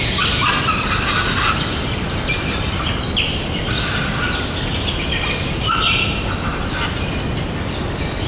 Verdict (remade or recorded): recorded